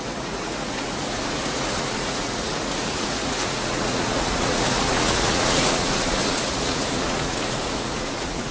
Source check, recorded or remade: remade